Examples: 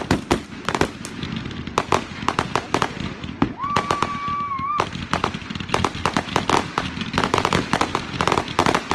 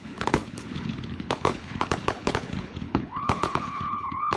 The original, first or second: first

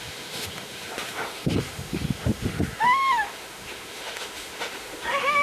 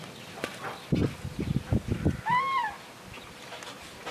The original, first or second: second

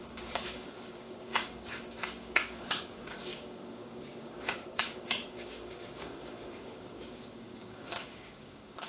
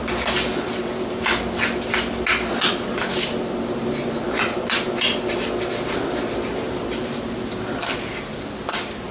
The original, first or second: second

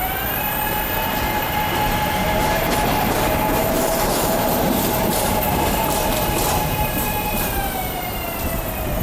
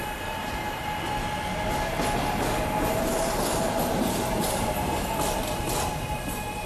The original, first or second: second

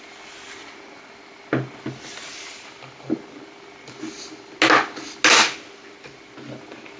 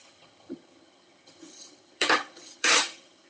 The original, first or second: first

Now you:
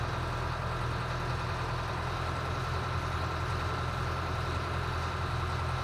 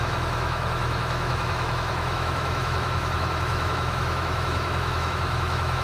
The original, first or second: first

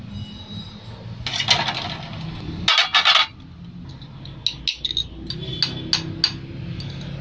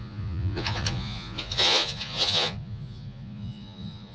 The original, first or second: first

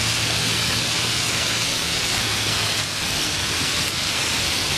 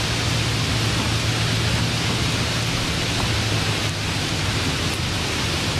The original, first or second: second